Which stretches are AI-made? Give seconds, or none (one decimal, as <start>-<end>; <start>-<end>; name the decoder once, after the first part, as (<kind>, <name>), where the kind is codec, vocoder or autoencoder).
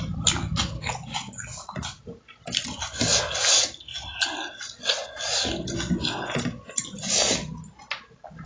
1.5-2.1 (vocoder, Vocos)